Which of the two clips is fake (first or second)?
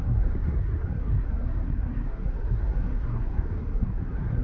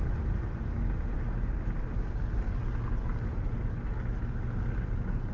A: first